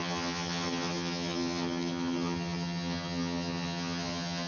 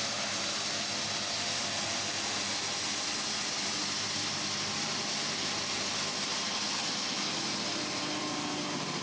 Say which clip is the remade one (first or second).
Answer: first